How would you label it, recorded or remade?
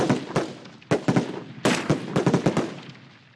recorded